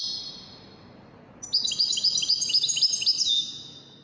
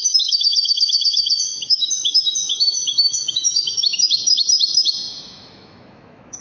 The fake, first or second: second